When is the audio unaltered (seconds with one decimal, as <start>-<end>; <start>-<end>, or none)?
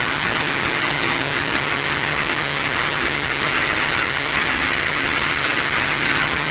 none